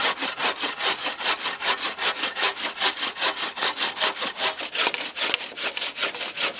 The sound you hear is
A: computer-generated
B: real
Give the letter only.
B